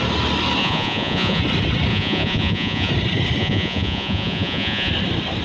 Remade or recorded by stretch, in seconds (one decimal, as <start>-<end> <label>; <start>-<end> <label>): 0.0-0.6 recorded; 0.6-1.4 remade; 1.4-1.9 recorded; 1.9-2.9 remade; 2.9-3.4 recorded; 3.4-4.9 remade; 4.9-5.4 recorded